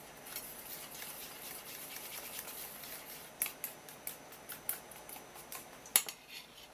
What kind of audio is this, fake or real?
real